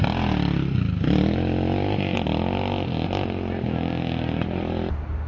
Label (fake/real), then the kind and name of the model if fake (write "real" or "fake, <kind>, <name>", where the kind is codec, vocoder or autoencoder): real